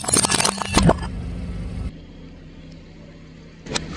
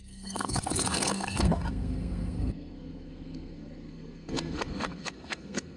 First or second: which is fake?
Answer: second